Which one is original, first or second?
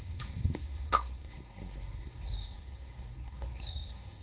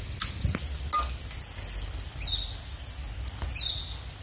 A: second